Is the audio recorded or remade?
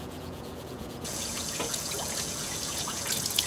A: remade